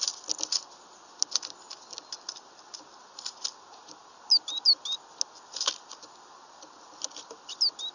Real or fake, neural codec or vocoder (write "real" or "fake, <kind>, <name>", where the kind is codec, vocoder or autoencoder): real